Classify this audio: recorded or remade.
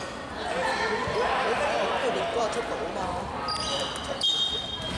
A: recorded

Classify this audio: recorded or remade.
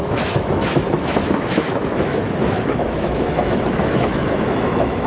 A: remade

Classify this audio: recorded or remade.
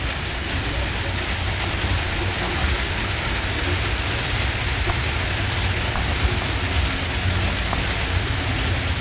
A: recorded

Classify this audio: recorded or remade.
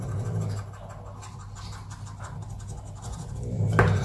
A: recorded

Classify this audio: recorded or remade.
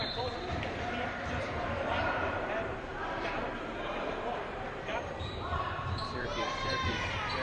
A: remade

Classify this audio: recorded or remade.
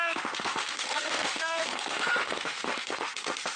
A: remade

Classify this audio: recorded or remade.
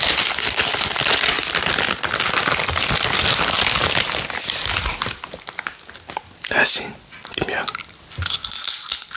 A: recorded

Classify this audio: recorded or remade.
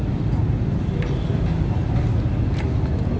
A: recorded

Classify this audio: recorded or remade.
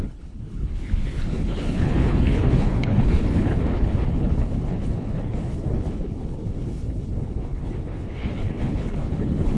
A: remade